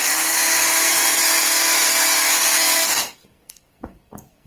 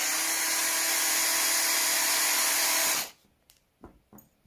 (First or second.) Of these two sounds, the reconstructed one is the first